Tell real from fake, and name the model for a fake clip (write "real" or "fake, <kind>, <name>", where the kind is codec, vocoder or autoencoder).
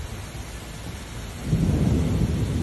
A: real